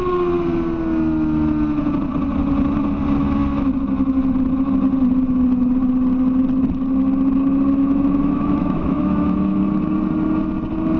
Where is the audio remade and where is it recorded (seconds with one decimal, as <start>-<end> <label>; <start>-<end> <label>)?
0.0-7.8 recorded; 7.8-9.6 remade; 9.6-11.0 recorded